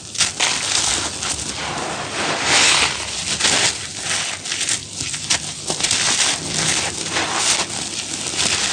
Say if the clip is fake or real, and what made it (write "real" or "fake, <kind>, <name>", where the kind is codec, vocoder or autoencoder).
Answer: real